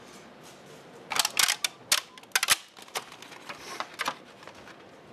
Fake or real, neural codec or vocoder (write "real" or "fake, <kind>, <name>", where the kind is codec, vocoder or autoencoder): real